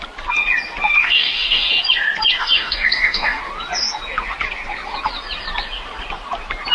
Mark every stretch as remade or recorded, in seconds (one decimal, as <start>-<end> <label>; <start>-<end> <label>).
0.0-1.0 recorded; 1.0-1.7 remade; 1.7-2.4 recorded; 2.4-3.4 remade; 3.4-6.7 recorded